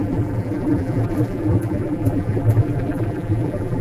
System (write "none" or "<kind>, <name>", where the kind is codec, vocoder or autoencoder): vocoder, BigVGAN v2